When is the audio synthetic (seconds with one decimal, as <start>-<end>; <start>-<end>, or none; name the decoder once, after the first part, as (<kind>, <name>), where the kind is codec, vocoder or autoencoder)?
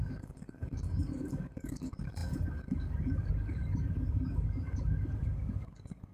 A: 0.0-6.1 (codec, DAC)